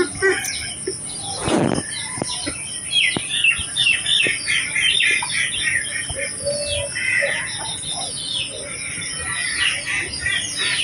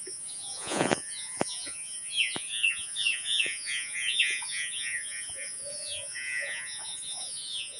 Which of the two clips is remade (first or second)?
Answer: second